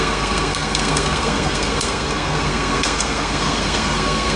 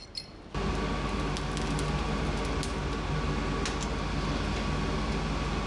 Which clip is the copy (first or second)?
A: first